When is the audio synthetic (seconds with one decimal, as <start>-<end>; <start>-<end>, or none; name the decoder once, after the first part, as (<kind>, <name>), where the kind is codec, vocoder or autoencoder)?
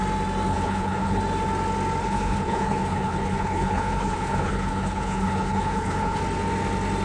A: 0.5-1.2 (codec, HILCodec); 2.0-6.2